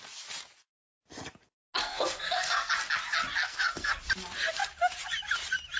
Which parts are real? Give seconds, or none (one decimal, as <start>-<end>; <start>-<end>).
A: 0.0-1.8; 2.7-3.4; 4.0-5.8